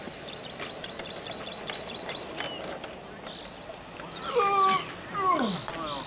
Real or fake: real